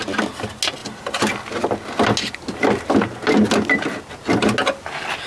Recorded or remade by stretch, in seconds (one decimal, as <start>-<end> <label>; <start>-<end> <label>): 0.0-5.3 recorded